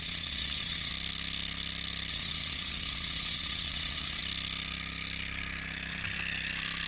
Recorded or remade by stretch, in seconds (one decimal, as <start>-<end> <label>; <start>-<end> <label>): 0.0-0.9 remade; 0.9-2.1 recorded; 2.1-4.2 remade; 4.2-6.9 recorded

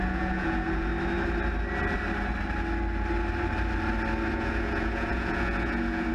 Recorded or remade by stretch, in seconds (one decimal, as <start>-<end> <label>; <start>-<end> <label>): 0.0-0.9 remade; 0.9-4.3 recorded; 4.3-6.1 remade